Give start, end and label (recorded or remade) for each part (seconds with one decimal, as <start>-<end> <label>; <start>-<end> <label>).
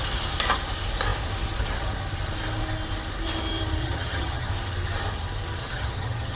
0.0-3.8 recorded; 3.8-4.5 remade; 4.5-5.6 recorded; 5.6-6.4 remade